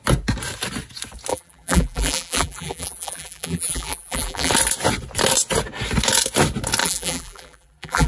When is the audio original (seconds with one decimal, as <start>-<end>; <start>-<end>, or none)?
0.0-1.3; 4.5-6.8